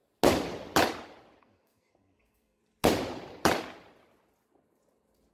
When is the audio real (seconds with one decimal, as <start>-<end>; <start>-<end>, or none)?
0.0-1.4; 2.6-5.3